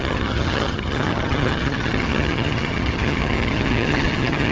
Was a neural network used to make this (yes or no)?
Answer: yes